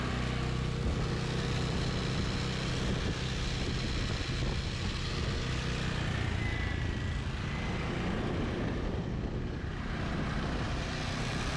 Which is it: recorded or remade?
recorded